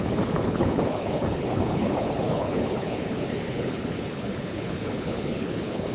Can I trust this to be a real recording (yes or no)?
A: no